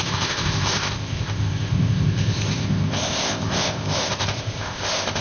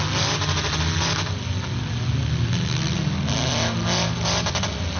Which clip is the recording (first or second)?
second